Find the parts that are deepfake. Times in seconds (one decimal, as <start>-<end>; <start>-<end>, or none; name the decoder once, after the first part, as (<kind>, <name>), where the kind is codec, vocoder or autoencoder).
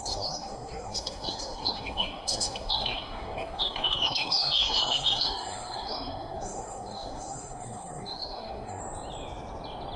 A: 0.0-8.8 (codec, SNAC)